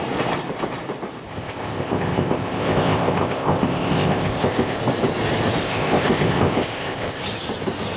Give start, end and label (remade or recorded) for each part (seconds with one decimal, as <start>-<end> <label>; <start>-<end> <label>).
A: 0.0-1.3 recorded; 1.3-4.8 remade; 4.8-5.6 recorded; 5.6-7.2 remade; 7.2-8.0 recorded